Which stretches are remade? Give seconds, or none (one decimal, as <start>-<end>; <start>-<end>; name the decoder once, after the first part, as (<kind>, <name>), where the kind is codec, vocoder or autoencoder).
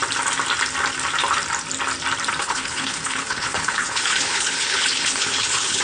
2.4-5.8 (codec, HILCodec)